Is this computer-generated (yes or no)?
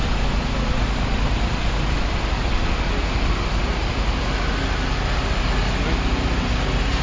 no